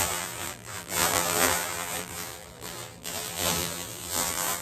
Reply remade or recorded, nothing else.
remade